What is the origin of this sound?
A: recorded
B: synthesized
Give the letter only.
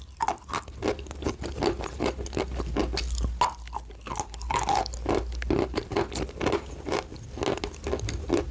A